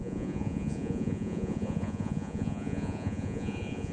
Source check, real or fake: fake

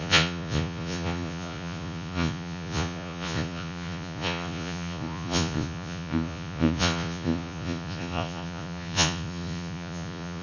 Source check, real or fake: fake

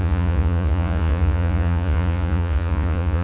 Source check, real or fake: fake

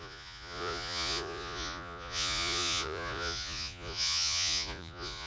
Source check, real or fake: fake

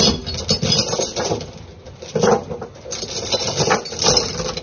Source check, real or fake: real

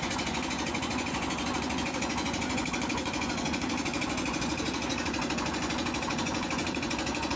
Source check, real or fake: fake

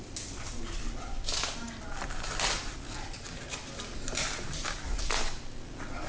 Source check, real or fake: real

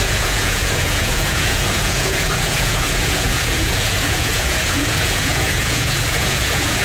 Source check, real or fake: fake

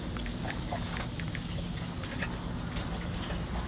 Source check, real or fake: real